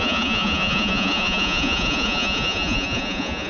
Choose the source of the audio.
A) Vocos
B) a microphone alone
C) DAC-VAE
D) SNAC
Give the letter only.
A